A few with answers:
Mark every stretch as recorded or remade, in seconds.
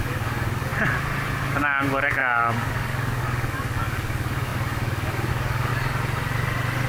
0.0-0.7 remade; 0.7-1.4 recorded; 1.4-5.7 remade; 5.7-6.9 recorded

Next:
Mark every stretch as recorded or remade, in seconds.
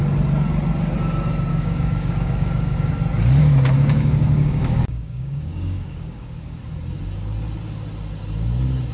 0.0-1.5 recorded; 1.5-2.9 remade; 2.9-3.4 recorded; 3.4-6.6 remade; 6.6-8.9 recorded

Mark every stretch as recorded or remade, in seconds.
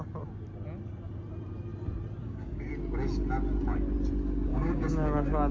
0.0-2.2 recorded; 2.2-2.7 remade; 2.7-4.5 recorded; 4.5-5.5 remade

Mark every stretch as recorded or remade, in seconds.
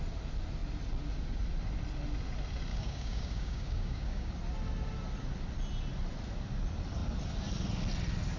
0.0-2.7 recorded; 2.7-4.3 remade; 4.3-8.4 recorded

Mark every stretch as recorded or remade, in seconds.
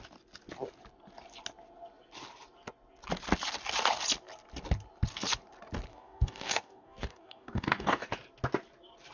0.0-5.9 recorded; 5.9-8.1 remade; 8.1-9.1 recorded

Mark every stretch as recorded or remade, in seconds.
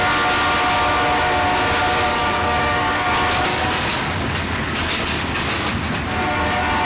0.0-2.1 recorded; 2.1-3.1 remade; 3.1-3.5 recorded; 3.5-5.7 remade; 5.7-6.8 recorded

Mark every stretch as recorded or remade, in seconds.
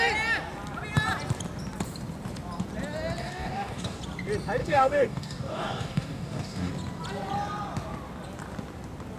0.0-3.2 recorded; 3.2-4.0 remade; 4.0-4.6 recorded; 4.6-6.7 remade; 6.7-9.2 recorded